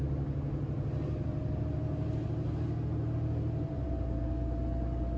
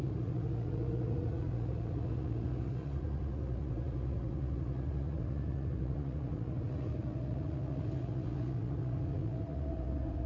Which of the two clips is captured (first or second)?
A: first